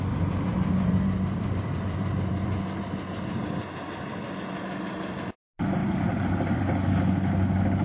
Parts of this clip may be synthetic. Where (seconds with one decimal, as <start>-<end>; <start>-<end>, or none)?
0.5-2.8; 5.8-6.6